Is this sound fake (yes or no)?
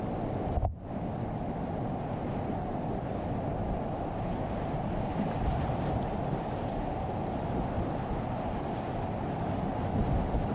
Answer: no